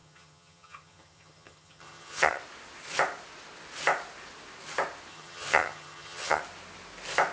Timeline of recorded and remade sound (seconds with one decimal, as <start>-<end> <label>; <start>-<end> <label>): 0.0-2.4 remade; 2.4-5.1 recorded; 5.1-6.4 remade; 6.4-7.3 recorded